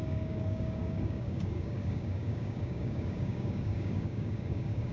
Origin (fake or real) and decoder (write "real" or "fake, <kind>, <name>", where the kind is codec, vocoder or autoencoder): fake, codec, DAC